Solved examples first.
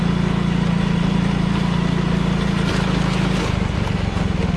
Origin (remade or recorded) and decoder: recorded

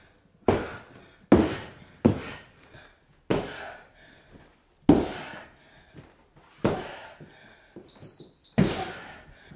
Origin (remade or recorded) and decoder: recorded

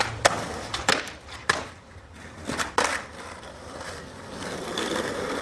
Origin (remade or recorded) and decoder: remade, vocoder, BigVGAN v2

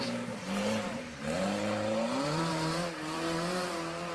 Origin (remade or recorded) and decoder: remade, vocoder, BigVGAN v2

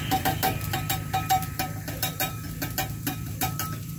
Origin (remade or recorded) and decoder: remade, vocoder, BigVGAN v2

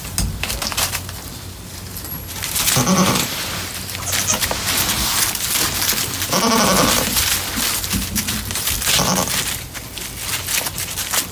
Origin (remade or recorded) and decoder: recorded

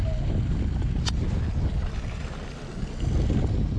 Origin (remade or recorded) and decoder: recorded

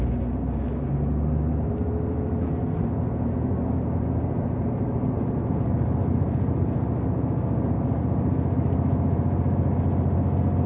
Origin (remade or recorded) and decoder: recorded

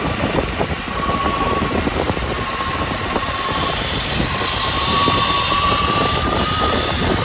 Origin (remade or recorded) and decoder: remade, vocoder, BigVGAN v2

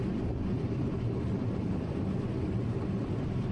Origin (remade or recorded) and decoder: recorded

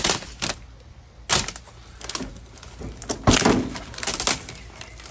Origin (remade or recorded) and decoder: recorded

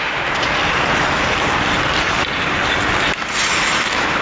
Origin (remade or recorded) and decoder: recorded